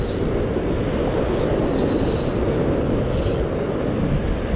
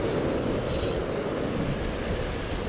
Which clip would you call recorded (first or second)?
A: first